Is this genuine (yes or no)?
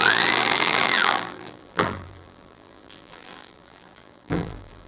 no